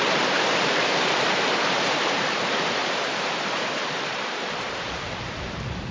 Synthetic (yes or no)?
yes